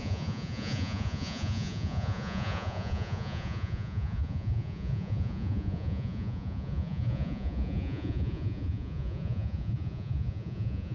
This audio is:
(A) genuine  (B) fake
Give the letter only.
B